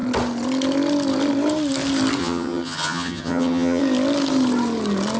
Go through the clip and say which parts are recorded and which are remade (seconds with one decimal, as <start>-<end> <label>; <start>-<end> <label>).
0.0-2.2 recorded; 2.2-3.8 remade; 3.8-5.2 recorded